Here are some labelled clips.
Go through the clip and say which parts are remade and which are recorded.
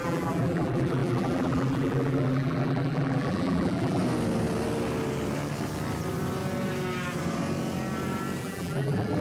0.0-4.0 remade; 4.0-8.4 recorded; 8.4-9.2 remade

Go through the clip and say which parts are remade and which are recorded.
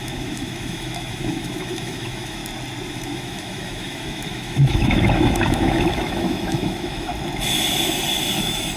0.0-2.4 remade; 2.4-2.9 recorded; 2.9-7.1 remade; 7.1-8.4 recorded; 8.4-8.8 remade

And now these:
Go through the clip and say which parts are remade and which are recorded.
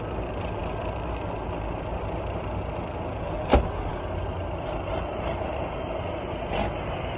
0.0-7.2 recorded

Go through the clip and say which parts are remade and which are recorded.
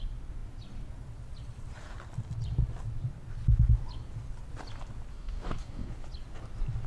0.0-5.1 recorded; 5.1-5.9 remade; 5.9-6.9 recorded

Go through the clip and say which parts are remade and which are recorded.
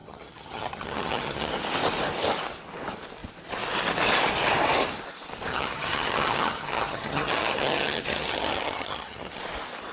0.0-1.5 remade; 1.5-5.5 recorded; 5.5-9.4 remade; 9.4-9.9 recorded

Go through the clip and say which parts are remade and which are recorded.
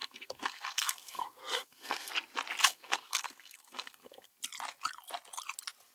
0.0-2.1 remade; 2.1-2.6 recorded; 2.6-4.3 remade; 4.3-5.9 recorded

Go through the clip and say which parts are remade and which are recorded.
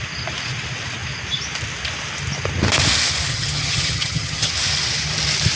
0.0-3.3 recorded; 3.3-4.5 remade; 4.5-5.6 recorded